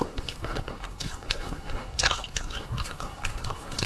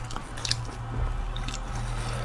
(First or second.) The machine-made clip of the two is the first